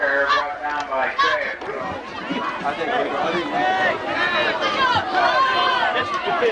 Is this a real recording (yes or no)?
yes